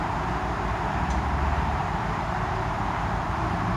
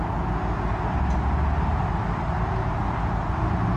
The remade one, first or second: first